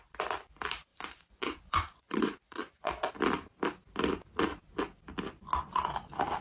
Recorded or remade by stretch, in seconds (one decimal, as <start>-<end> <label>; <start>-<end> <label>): 0.0-0.9 recorded; 0.9-3.1 remade; 3.1-6.4 recorded

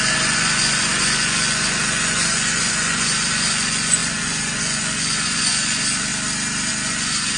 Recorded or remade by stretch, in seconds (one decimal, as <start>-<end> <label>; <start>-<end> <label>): 0.0-6.1 remade; 6.1-6.7 recorded; 6.7-7.4 remade